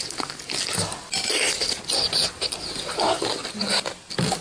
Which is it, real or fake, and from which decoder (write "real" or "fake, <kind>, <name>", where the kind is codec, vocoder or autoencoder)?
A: real